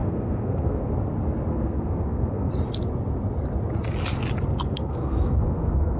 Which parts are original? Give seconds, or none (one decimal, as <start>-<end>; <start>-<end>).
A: 0.9-1.5; 2.5-4.7